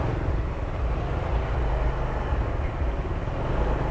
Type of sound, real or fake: real